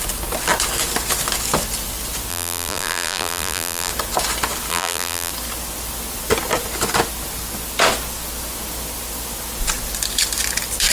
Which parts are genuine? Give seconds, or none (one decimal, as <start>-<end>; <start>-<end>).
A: 0.0-2.3; 3.9-4.7; 5.3-10.9